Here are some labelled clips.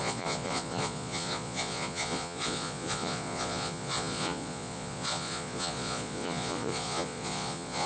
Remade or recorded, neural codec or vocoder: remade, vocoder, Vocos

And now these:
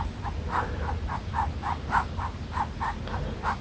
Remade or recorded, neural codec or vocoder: recorded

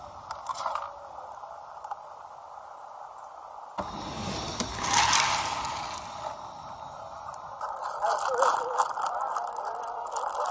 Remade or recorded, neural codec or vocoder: recorded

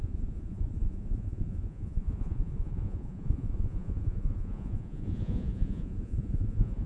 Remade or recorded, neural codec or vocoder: remade, vocoder, Vocos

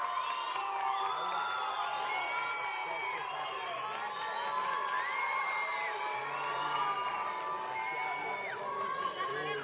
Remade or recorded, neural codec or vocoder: recorded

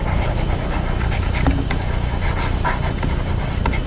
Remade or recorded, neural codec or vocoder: recorded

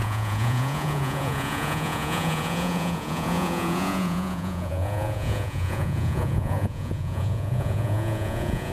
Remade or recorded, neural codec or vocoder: remade, vocoder, Vocos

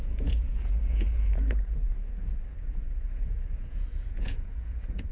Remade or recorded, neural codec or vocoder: remade, vocoder, Vocos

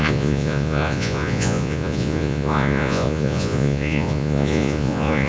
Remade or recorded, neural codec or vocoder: remade, vocoder, Vocos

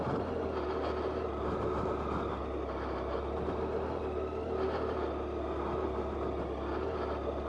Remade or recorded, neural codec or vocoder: recorded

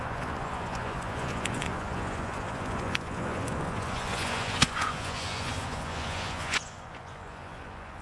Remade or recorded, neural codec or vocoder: remade, vocoder, Vocos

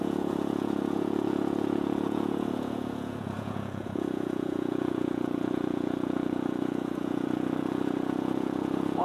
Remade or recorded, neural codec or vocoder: remade, vocoder, Vocos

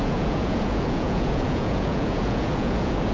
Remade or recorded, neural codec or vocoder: remade, vocoder, Vocos